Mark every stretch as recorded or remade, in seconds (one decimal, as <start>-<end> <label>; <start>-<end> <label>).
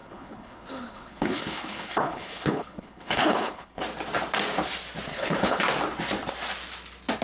0.0-3.8 remade; 3.8-5.1 recorded; 5.1-5.6 remade; 5.6-7.2 recorded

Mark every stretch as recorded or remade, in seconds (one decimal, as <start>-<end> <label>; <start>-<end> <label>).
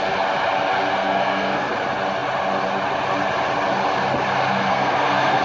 0.0-0.9 recorded; 0.9-1.7 remade; 1.7-4.7 recorded; 4.7-5.4 remade